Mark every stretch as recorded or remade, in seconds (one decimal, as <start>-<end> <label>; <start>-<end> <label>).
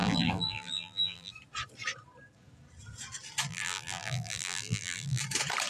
0.0-1.3 remade; 1.3-3.5 recorded; 3.5-5.2 remade; 5.2-5.7 recorded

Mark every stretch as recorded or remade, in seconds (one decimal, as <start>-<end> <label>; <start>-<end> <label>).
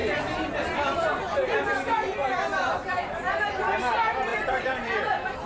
0.0-1.2 remade; 1.2-2.2 recorded; 2.2-3.2 remade; 3.2-4.3 recorded; 4.3-5.5 remade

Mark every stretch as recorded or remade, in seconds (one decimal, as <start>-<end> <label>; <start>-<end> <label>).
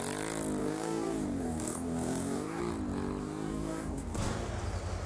0.0-0.6 recorded; 0.6-2.6 remade; 2.6-3.2 recorded; 3.2-4.5 remade; 4.5-5.1 recorded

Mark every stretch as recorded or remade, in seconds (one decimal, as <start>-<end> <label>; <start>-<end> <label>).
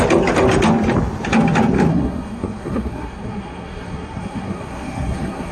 0.0-1.9 recorded; 1.9-5.5 remade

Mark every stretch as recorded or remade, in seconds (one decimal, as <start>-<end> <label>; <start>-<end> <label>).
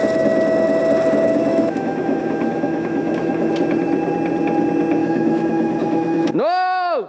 0.0-1.5 recorded; 1.5-3.5 remade; 3.5-5.0 recorded; 5.0-7.1 remade